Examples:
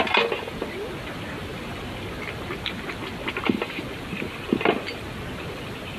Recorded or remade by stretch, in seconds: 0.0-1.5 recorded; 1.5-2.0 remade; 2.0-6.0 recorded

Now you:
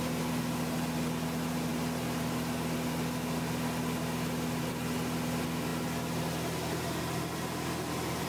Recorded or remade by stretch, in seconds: 0.0-8.3 recorded

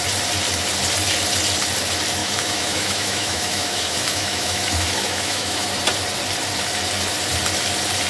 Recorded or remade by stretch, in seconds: 0.0-2.2 recorded; 2.2-5.7 remade; 5.7-8.1 recorded

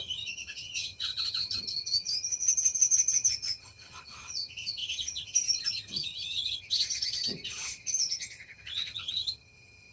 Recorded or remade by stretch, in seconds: 0.0-9.9 remade

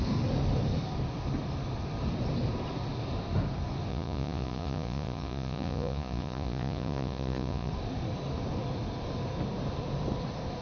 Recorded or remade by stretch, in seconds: 0.0-3.9 recorded; 3.9-7.7 remade; 7.7-10.6 recorded

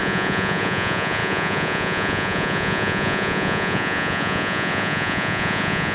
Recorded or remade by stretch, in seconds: 0.0-5.9 remade

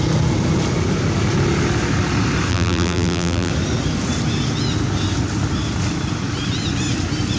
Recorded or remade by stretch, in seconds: 0.0-2.5 recorded; 2.5-3.5 remade; 3.5-7.4 recorded

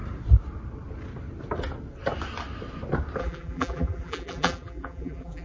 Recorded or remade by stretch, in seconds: 0.0-3.2 recorded; 3.2-5.4 remade